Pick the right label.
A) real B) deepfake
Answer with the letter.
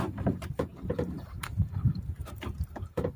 B